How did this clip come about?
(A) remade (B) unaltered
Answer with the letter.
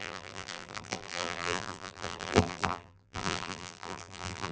A